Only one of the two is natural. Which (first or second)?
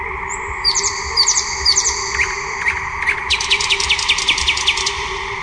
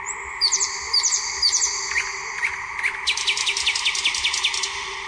second